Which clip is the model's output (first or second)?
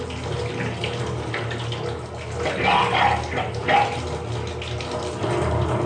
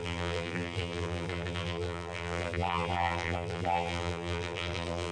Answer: second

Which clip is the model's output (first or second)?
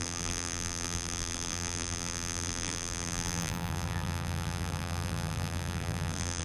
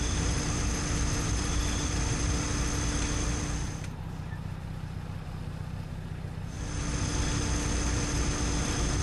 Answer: first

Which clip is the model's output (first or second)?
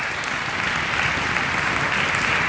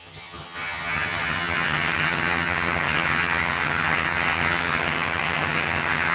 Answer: second